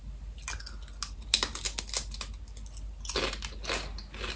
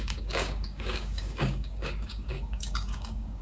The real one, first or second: first